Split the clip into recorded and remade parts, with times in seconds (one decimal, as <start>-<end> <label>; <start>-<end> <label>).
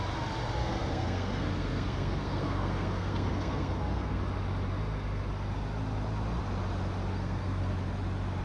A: 0.0-0.6 recorded; 0.6-4.2 remade; 4.2-7.1 recorded; 7.1-7.7 remade; 7.7-8.4 recorded